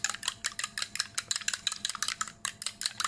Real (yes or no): yes